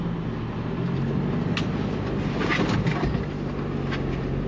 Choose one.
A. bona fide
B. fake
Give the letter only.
A